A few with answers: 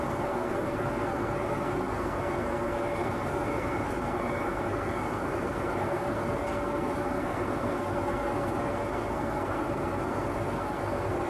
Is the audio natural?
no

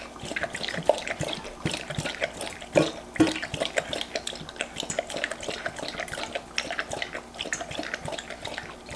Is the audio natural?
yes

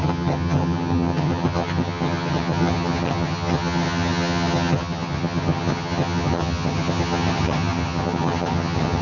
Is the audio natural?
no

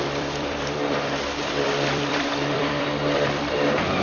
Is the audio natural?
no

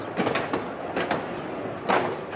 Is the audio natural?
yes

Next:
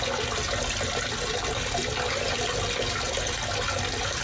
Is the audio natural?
yes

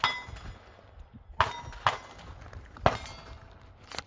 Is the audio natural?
yes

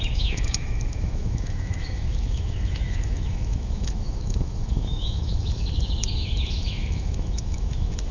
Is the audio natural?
no